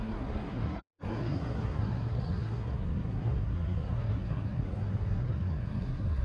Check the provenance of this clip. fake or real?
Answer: fake